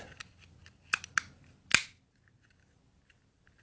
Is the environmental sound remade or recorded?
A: recorded